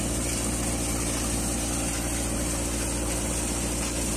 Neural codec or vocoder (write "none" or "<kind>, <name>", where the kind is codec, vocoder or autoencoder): none